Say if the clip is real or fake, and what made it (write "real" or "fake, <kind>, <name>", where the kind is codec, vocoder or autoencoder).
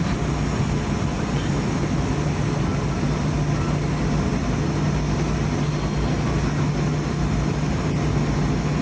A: real